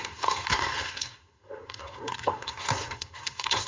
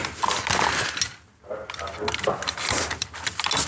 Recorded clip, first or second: second